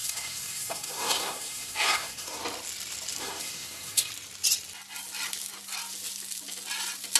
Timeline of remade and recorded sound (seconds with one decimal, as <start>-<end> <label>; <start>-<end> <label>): 0.0-2.4 remade; 2.4-3.2 recorded; 3.2-4.1 remade; 4.1-7.2 recorded